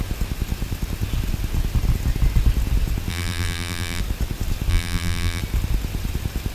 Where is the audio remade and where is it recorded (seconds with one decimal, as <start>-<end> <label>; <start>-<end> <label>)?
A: 0.0-3.1 recorded; 3.1-4.0 remade; 4.0-4.7 recorded; 4.7-5.4 remade; 5.4-6.5 recorded